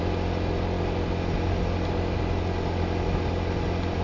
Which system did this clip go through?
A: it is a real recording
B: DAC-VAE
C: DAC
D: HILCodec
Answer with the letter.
A